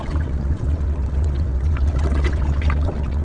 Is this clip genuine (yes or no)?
no